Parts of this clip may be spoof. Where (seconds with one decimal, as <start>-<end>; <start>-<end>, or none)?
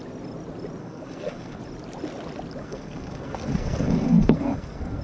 0.8-1.6; 2.6-5.0